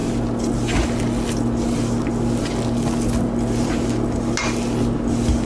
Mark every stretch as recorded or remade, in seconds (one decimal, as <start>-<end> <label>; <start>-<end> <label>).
0.0-5.5 recorded